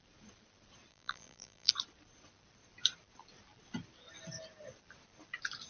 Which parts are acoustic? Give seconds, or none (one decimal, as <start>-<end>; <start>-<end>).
0.0-0.9; 1.7-5.7